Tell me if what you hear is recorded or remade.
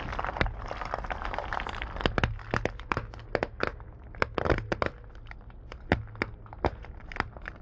recorded